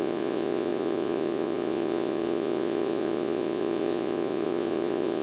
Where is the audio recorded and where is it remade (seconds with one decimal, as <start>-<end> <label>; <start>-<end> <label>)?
0.0-5.2 remade